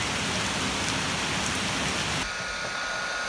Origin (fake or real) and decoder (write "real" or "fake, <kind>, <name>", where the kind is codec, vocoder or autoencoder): real